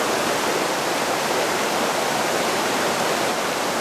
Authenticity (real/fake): real